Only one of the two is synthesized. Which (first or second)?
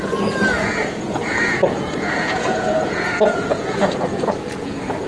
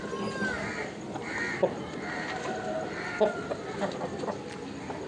first